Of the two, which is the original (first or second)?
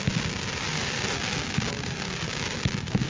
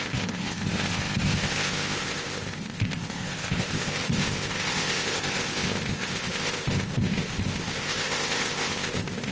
first